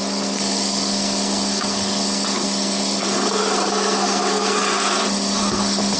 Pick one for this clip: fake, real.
fake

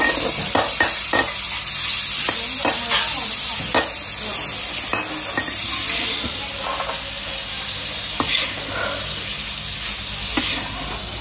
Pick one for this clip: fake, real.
real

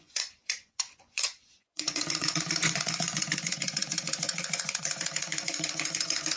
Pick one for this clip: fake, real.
fake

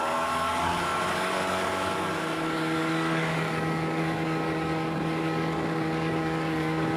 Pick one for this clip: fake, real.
fake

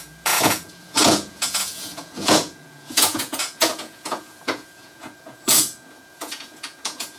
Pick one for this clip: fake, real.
fake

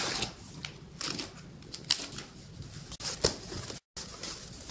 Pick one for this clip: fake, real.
real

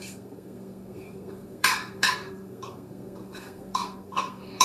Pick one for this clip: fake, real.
fake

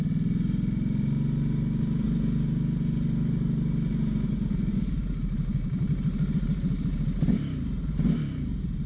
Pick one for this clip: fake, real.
real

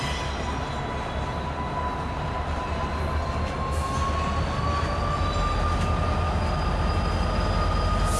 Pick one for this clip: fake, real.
real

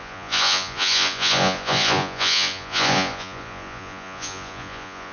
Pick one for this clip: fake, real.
fake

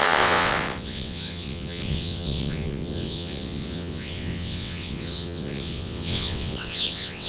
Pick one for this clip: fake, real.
fake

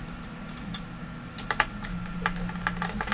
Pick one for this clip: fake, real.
real